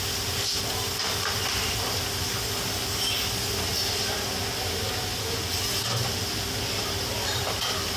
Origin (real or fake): real